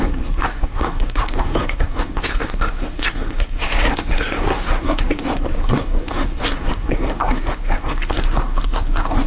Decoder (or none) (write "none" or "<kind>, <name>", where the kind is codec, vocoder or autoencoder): codec, SNAC